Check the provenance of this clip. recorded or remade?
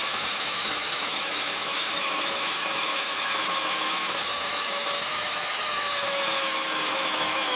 remade